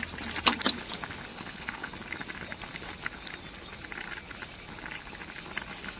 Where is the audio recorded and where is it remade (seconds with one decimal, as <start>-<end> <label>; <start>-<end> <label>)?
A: 0.0-1.3 recorded; 1.3-1.9 remade; 1.9-6.0 recorded